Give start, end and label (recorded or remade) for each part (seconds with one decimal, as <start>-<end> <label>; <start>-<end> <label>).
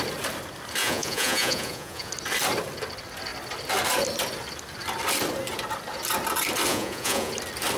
0.0-0.8 recorded; 0.8-2.1 remade; 2.1-6.7 recorded; 6.7-7.3 remade; 7.3-7.8 recorded